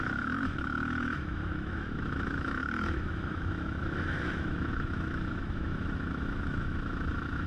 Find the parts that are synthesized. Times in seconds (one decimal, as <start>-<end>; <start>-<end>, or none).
0.0-7.5